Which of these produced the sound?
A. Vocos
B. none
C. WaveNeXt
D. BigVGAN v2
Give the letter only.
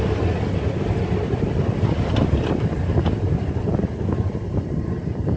B